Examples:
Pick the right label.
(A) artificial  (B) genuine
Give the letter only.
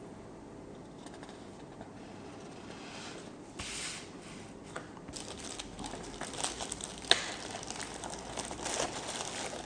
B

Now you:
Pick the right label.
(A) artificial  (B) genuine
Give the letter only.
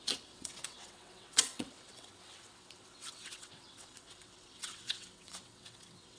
A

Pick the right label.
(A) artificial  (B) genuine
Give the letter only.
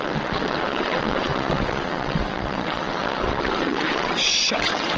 A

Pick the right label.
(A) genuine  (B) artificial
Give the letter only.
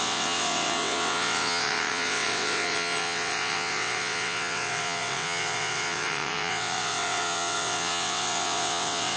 B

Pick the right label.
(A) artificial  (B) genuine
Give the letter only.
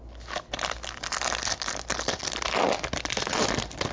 B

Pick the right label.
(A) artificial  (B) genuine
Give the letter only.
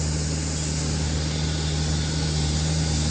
B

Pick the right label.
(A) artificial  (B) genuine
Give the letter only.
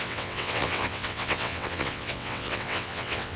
A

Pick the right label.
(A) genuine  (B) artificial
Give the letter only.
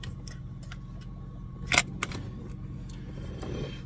A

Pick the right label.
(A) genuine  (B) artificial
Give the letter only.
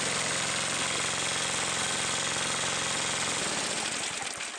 A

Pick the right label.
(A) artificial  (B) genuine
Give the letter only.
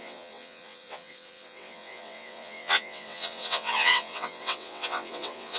A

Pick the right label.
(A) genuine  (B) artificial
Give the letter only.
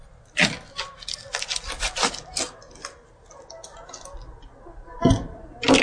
A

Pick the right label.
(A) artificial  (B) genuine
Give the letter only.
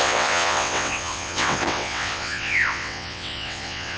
A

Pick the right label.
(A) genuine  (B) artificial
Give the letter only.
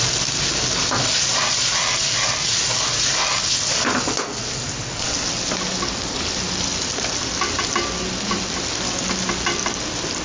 A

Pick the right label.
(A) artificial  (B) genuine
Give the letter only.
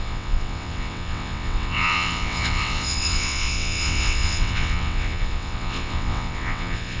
A